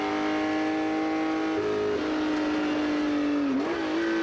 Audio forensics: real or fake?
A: real